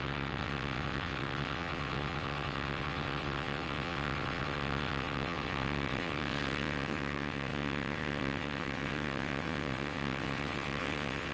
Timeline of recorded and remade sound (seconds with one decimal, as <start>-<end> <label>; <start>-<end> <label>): 0.0-11.3 remade